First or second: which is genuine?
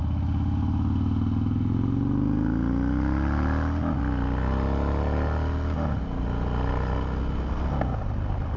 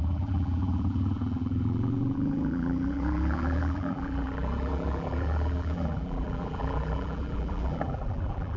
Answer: first